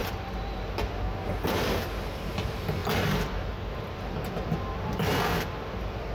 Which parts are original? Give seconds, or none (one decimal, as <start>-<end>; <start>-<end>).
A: 0.0-6.1